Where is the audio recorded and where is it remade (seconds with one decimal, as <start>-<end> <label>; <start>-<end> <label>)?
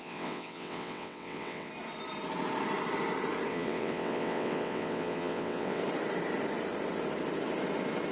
0.0-1.7 remade; 1.7-3.5 recorded; 3.5-5.8 remade; 5.8-8.1 recorded